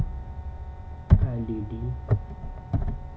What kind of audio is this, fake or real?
real